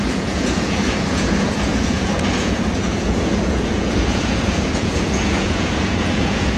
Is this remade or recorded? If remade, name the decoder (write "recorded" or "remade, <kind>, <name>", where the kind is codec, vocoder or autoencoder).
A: remade, vocoder, Vocos